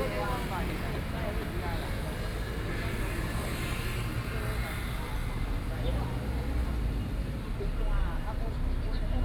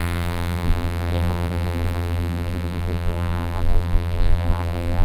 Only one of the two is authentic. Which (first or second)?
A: first